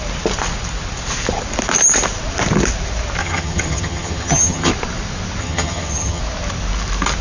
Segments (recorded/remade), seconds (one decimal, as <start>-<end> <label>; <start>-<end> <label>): 0.0-3.2 recorded; 3.2-4.7 remade; 4.7-5.4 recorded; 5.4-6.2 remade; 6.2-7.2 recorded